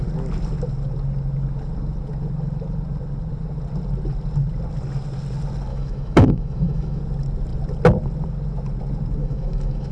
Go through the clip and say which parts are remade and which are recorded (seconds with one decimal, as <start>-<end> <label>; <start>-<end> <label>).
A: 0.0-5.7 recorded; 5.7-7.0 remade; 7.0-9.2 recorded; 9.2-9.9 remade